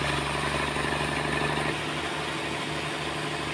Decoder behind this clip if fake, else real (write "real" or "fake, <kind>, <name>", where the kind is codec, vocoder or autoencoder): real